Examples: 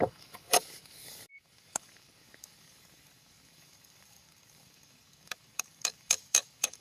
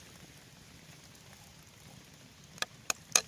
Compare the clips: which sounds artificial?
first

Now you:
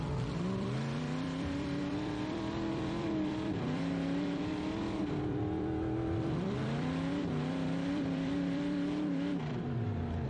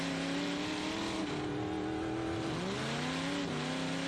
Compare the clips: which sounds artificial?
first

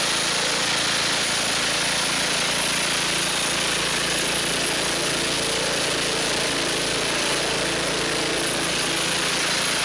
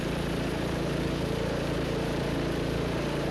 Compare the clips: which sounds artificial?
second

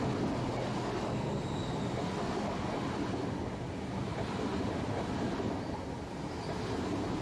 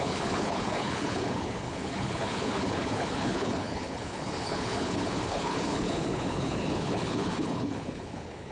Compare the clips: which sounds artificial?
second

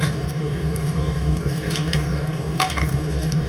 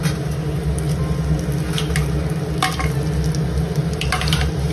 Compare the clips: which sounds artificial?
first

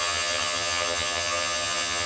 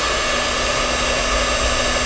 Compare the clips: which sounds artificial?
first